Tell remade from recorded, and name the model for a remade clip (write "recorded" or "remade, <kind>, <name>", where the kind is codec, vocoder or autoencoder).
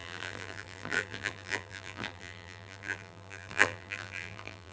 remade, vocoder, BigVGAN v2